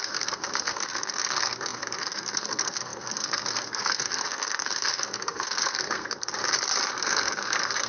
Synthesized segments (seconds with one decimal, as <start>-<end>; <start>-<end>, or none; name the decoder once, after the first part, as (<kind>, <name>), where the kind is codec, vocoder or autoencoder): 0.0-6.3 (codec, SNAC); 6.9-7.9